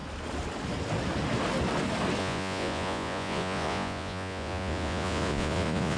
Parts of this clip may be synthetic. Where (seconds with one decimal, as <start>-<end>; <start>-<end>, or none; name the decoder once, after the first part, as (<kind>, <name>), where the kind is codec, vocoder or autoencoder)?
2.2-6.0 (vocoder, Vocos)